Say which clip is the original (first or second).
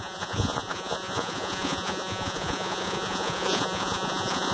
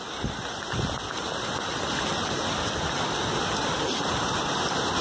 second